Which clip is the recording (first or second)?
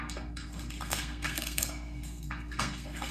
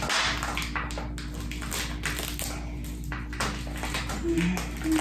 second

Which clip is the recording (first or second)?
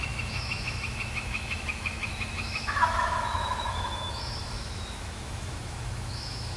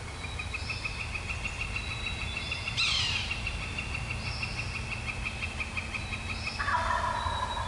second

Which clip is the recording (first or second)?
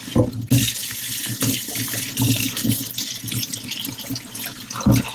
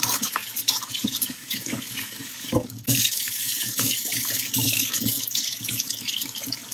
first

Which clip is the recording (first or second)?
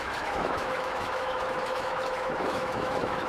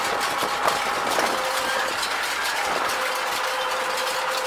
second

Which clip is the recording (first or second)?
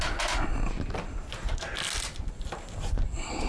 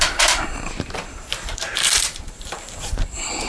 first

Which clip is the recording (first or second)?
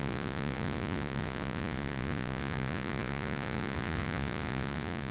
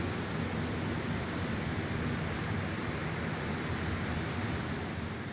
second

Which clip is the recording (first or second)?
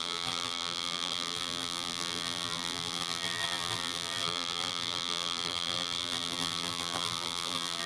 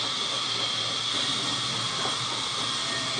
second